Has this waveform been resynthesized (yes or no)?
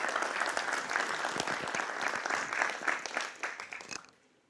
no